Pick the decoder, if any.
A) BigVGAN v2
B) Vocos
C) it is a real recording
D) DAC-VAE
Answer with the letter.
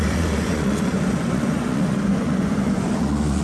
B